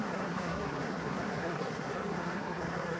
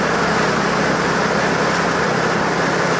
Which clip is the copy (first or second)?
first